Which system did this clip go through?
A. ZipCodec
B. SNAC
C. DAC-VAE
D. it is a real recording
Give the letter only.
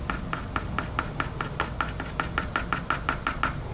D